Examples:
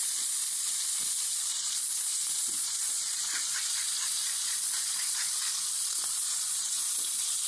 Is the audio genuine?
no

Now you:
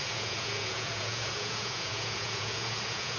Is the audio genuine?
no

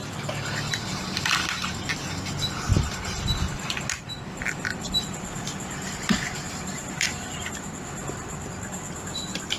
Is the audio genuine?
yes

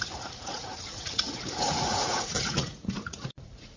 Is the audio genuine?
no